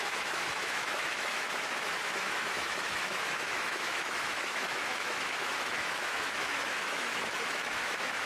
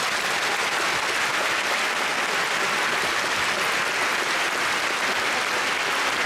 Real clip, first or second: second